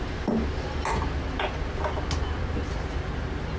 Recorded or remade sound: recorded